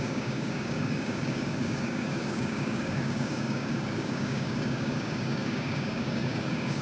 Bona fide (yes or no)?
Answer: no